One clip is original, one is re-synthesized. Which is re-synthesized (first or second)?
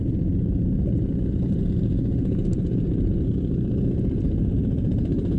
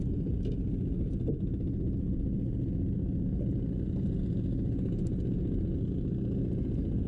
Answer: first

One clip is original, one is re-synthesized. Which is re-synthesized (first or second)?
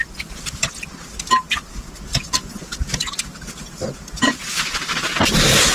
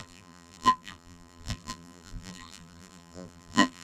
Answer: second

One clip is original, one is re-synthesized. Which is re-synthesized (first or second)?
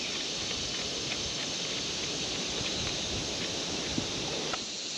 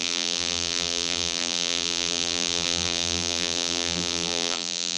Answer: second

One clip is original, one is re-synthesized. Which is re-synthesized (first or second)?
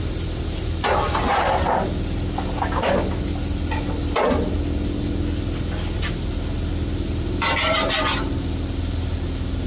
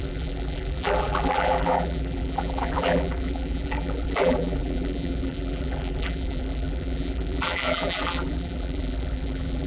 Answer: second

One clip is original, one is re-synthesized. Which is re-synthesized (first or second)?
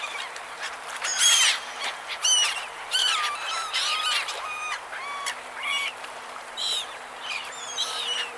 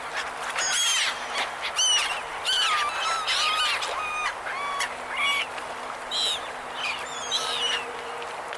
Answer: first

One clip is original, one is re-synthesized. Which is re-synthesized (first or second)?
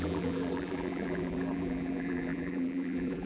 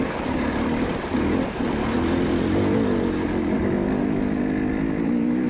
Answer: first